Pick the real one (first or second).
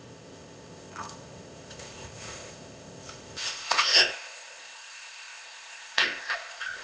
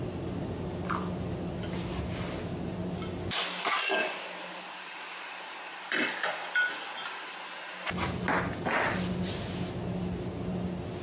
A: second